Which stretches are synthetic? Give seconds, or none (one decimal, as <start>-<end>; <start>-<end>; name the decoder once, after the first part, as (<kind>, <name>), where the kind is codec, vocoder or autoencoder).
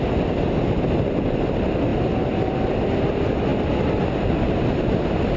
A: none